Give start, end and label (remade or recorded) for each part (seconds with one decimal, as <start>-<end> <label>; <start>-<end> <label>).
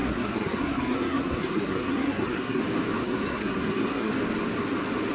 0.0-2.6 remade; 2.6-3.0 recorded; 3.0-4.1 remade; 4.1-5.1 recorded